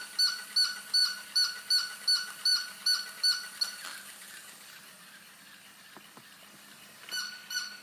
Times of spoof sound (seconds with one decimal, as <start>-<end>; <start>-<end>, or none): 1.0-1.7; 2.5-7.0